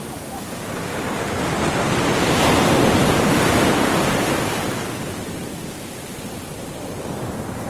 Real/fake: real